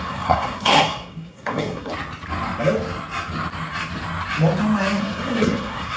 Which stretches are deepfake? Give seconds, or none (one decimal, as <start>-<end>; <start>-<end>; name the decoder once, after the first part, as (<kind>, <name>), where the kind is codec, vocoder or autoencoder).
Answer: 0.0-1.9 (codec, SNAC); 5.0-6.0

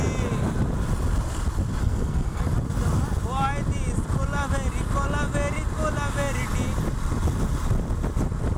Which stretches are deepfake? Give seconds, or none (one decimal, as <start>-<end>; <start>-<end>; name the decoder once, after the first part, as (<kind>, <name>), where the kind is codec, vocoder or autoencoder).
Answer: 1.8-2.4 (codec, SNAC)

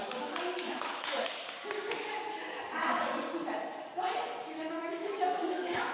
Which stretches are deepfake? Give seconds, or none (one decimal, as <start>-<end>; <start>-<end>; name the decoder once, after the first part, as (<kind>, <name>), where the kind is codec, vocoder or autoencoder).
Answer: 0.5-1.3 (autoencoder, DAC-VAE); 4.4-5.9

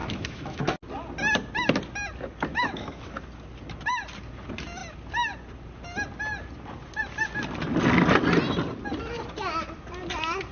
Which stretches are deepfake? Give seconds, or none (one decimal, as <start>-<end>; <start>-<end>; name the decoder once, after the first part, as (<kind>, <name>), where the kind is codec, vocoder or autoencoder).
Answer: 0.0-0.6 (autoencoder, DAC-VAE); 2.5-3.1

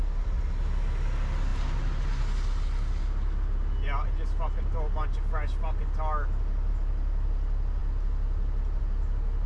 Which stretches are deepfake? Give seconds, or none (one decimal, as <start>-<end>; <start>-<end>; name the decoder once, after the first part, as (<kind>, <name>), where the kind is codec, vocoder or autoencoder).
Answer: none

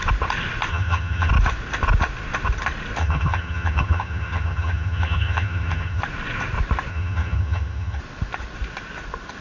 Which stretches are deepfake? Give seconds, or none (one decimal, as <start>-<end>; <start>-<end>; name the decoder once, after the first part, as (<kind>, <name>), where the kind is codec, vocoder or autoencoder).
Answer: 0.7-1.3 (vocoder, HiFi-GAN); 3.0-6.0; 6.9-8.0

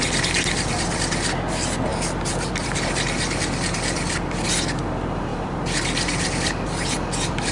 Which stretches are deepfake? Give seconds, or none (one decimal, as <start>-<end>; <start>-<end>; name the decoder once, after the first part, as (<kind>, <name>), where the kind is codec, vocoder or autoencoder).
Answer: 1.9-3.4 (vocoder, BigVGAN v2); 5.3-6.3